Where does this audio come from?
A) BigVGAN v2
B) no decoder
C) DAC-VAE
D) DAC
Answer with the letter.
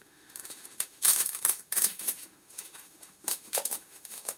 C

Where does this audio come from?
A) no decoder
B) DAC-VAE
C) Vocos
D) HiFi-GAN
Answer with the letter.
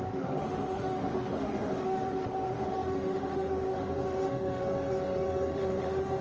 B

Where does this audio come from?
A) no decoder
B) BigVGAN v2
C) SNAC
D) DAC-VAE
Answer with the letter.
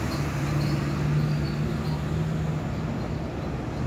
A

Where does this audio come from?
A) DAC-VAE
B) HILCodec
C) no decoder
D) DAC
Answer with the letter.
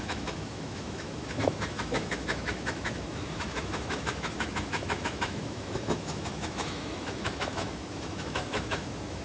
A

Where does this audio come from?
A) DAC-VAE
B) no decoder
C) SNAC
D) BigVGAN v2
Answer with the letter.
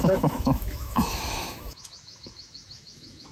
A